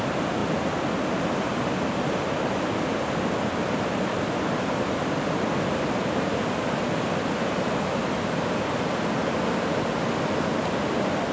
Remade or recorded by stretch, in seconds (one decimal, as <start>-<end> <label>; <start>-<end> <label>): 0.0-11.3 recorded